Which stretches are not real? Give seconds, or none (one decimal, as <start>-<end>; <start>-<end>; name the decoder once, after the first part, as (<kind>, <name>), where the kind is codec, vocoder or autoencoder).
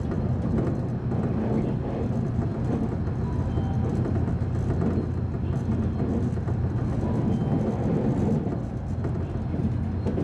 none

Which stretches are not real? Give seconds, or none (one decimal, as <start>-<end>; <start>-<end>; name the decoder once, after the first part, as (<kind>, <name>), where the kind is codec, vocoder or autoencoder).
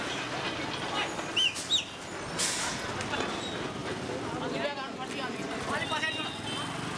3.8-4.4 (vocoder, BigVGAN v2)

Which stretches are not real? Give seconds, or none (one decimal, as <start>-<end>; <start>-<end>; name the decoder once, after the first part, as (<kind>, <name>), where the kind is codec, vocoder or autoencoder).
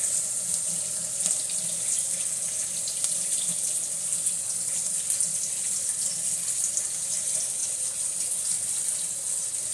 7.6-8.2 (vocoder, BigVGAN v2)